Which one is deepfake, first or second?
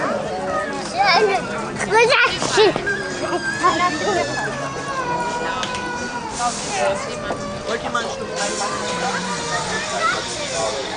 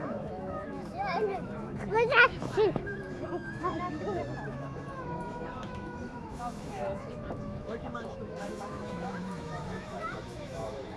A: second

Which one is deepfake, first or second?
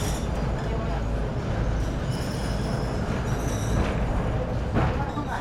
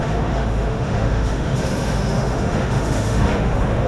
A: second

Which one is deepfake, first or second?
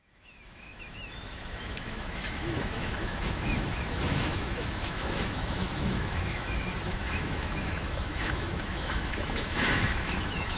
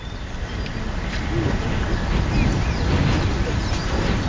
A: first